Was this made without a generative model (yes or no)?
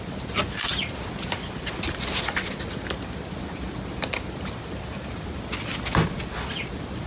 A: yes